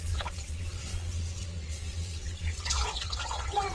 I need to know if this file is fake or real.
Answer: fake